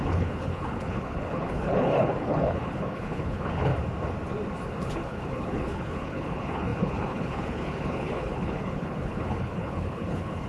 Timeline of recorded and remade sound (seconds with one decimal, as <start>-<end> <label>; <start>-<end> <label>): 0.0-3.7 remade; 3.7-4.7 recorded; 4.7-10.5 remade